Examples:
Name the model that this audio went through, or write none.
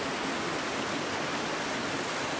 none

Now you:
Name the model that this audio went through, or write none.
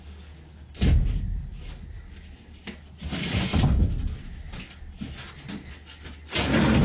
none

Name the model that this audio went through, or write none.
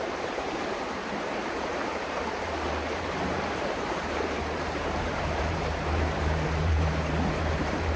vocoder, BigVGAN v2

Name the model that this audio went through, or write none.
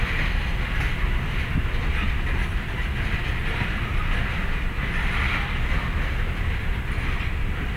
none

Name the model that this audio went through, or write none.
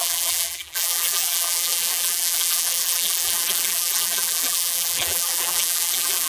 vocoder, BigVGAN v2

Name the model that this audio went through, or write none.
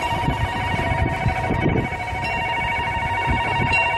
vocoder, BigVGAN v2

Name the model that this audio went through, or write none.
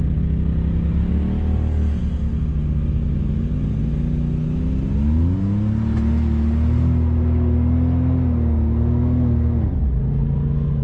none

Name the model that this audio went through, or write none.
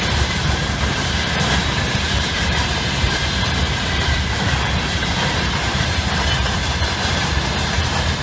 vocoder, BigVGAN v2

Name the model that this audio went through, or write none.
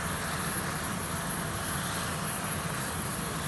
none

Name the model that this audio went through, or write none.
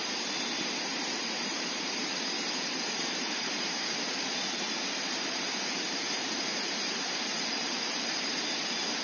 vocoder, BigVGAN v2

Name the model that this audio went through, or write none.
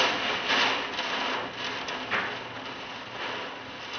none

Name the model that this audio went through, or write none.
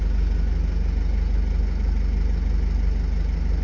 none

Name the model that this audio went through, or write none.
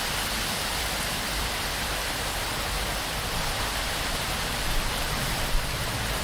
vocoder, BigVGAN v2